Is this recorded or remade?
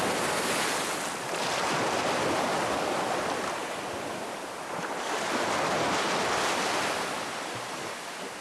recorded